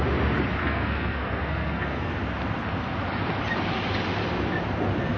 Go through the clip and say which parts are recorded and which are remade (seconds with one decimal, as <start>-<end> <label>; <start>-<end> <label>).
0.0-0.6 recorded; 0.6-2.1 remade; 2.1-5.2 recorded